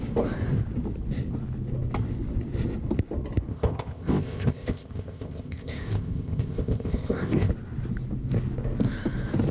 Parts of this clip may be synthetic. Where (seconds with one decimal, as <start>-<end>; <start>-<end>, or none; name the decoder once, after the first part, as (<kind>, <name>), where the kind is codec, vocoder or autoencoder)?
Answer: 3.5-7.5 (codec, ZipCodec)